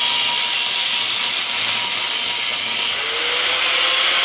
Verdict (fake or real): real